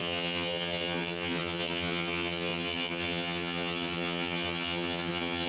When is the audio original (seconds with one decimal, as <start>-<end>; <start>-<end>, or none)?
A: none